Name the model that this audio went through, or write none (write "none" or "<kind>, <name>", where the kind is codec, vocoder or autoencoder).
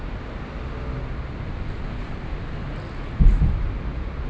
none